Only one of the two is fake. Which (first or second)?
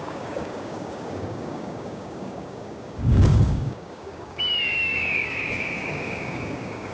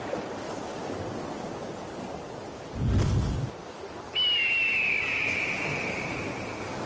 first